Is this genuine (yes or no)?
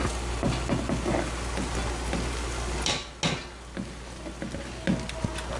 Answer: yes